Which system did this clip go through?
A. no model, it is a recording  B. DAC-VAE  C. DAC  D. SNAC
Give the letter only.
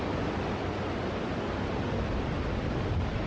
A